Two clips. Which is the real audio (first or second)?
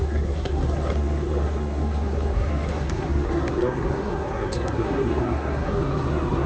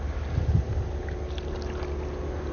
second